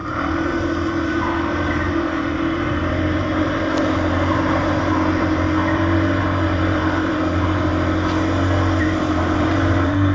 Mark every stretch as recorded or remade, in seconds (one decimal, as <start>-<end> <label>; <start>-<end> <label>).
0.0-7.7 remade; 7.7-8.8 recorded; 8.8-10.1 remade